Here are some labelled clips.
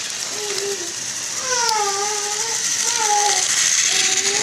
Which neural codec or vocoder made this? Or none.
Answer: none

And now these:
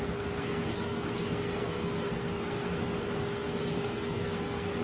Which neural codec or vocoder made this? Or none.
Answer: codec, SNAC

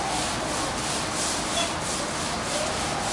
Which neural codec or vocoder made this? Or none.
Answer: none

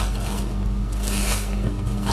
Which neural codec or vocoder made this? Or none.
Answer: codec, SNAC